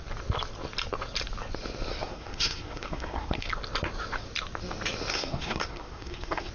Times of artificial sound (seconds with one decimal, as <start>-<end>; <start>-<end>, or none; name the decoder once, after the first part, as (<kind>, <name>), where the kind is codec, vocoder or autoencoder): 1.9-3.5 (codec, SNAC); 5.1-6.5